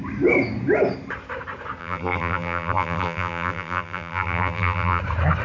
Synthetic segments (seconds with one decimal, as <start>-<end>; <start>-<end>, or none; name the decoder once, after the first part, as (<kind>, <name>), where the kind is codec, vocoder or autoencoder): 1.8-5.0 (vocoder, BigVGAN v2)